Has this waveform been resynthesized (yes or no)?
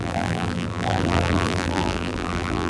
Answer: yes